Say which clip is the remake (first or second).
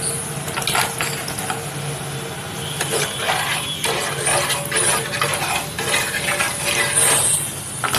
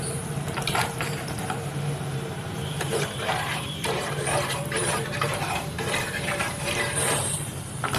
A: second